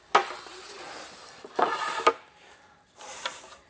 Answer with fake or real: real